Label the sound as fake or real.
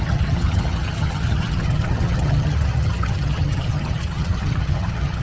fake